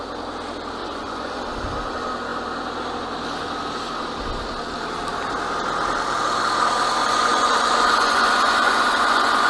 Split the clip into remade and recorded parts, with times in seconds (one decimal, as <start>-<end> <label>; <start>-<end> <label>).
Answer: 0.0-0.8 recorded; 0.8-1.4 remade; 1.4-7.0 recorded; 7.0-9.5 remade